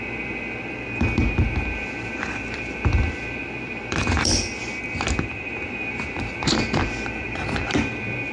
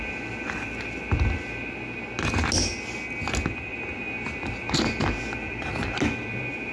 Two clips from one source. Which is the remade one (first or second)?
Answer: first